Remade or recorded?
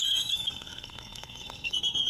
remade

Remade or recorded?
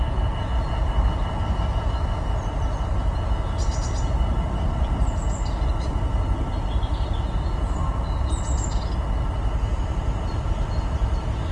recorded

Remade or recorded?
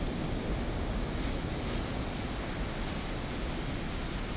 recorded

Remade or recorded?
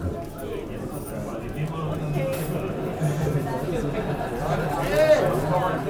recorded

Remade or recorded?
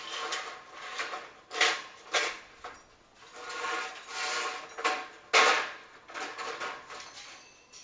recorded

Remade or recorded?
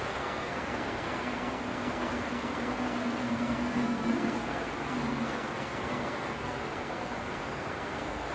remade